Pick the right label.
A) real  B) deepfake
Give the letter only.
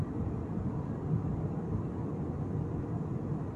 A